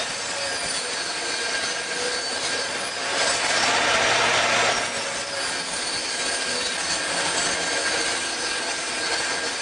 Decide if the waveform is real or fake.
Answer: real